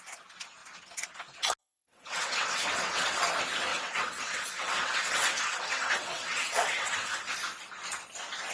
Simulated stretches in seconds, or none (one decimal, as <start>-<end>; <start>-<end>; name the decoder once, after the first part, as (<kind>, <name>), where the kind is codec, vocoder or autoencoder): 1.6-3.2 (vocoder, WaveNeXt); 3.7-7.3